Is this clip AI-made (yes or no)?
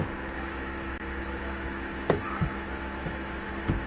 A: yes